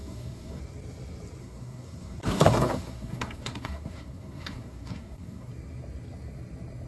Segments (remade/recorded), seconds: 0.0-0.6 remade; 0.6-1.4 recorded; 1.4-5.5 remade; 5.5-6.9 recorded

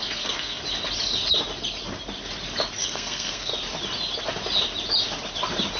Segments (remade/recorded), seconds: 0.0-0.6 remade; 0.6-2.8 recorded; 2.8-3.5 remade; 3.5-5.8 recorded